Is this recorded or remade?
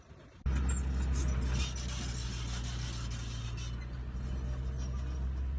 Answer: recorded